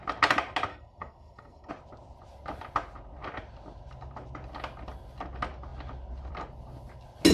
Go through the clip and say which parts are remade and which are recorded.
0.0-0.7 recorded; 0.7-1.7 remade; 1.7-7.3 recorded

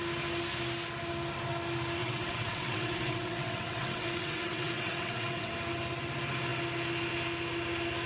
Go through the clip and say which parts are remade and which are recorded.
0.0-2.0 recorded; 2.0-5.5 remade; 5.5-8.1 recorded

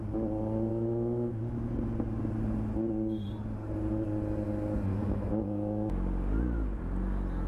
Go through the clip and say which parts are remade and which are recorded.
0.0-0.7 recorded; 0.7-1.7 remade; 1.7-4.9 recorded; 4.9-5.9 remade; 5.9-7.5 recorded

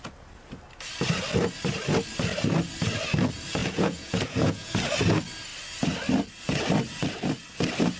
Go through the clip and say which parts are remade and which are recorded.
0.0-3.6 recorded; 3.6-4.7 remade; 4.7-8.0 recorded

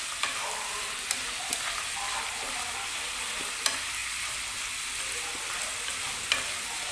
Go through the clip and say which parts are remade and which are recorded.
0.0-6.9 recorded